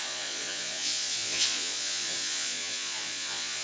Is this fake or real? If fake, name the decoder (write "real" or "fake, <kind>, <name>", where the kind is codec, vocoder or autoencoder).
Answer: fake, vocoder, Vocos